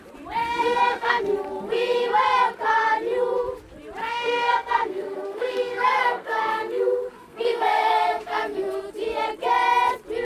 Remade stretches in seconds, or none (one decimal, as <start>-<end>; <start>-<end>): 0.4-1.2; 4.0-8.9